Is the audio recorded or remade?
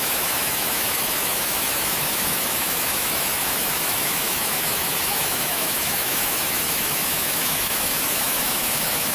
remade